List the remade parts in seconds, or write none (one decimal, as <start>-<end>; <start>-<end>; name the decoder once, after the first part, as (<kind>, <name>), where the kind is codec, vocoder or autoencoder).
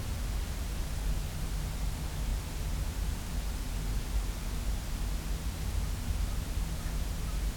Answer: none